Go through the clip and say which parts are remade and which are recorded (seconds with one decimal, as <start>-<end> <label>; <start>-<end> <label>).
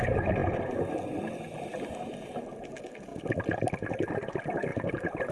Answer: 0.0-5.3 recorded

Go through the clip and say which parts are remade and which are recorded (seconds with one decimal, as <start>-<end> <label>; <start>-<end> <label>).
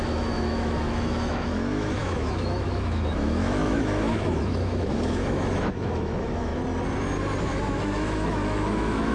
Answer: 0.0-6.5 remade; 6.5-7.4 recorded; 7.4-9.1 remade